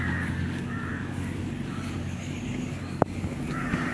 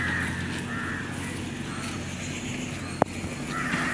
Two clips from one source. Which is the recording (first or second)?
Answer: second